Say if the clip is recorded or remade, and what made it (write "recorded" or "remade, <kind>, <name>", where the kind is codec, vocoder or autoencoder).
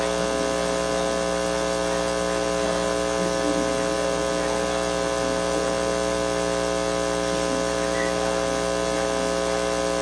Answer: recorded